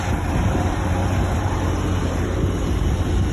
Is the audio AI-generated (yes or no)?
yes